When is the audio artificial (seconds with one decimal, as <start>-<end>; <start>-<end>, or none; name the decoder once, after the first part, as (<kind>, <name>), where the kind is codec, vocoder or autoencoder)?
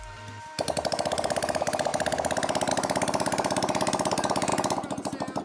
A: 0.0-1.9 (vocoder, BigVGAN v2); 2.7-4.5